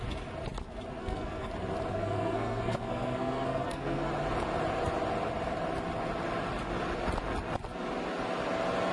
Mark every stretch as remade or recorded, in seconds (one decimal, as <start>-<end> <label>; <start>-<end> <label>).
0.0-1.0 recorded; 1.0-1.5 remade; 1.5-1.9 recorded; 1.9-4.1 remade; 4.1-8.9 recorded